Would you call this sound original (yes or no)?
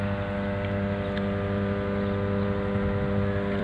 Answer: no